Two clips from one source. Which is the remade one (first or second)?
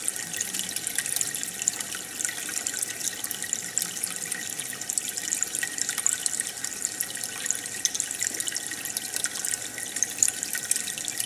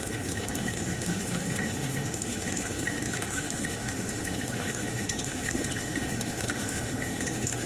second